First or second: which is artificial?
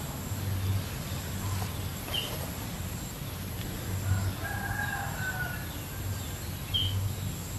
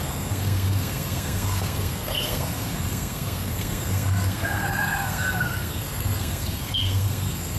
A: second